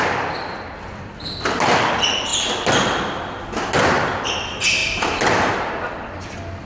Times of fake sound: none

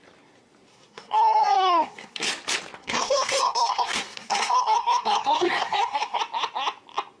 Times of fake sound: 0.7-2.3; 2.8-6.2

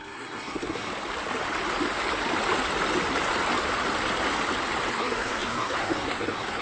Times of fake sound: 0.0-0.9; 4.9-6.6

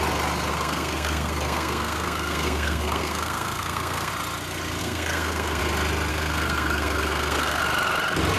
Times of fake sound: 0.5-4.1; 4.8-5.6; 6.1-7.6

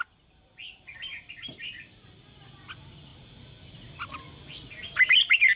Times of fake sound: none

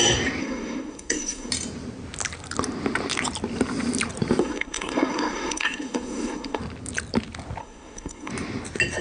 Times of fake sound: 0.4-1.5; 4.4-6.6; 7.6-8.3

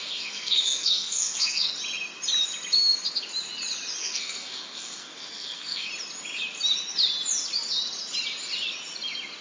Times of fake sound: 0.0-1.7; 4.0-5.9

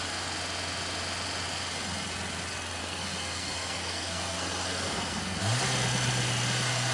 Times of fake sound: 2.8-5.4